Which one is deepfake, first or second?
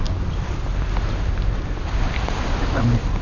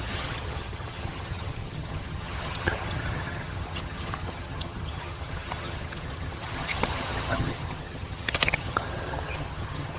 second